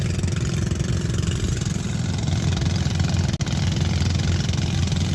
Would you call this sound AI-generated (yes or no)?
no